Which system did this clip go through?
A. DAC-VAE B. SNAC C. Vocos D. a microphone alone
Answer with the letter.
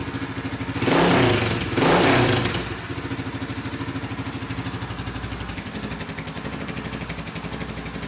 D